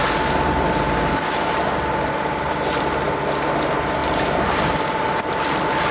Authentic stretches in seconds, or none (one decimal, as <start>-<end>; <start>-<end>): 0.0-5.9

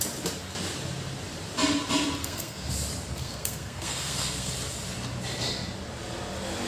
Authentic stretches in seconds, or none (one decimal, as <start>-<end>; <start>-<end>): 0.0-2.2; 2.7-3.2; 4.5-6.7

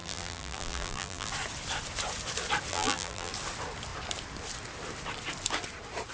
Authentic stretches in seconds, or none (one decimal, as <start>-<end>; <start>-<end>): 1.3-2.7; 3.3-6.1

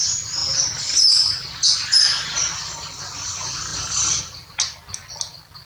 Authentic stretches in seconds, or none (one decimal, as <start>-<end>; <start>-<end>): 0.0-5.7

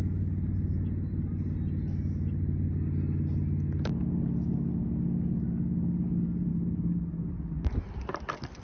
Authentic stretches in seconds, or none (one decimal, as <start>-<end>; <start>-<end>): 0.0-6.5; 7.3-8.6

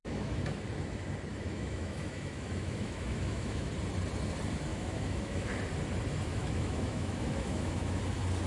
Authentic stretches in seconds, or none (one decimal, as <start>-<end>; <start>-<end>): 0.6-1.3; 3.7-4.7; 5.5-6.3; 8.0-8.5